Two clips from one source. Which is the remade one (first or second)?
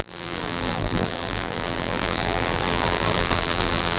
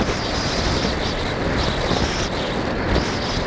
first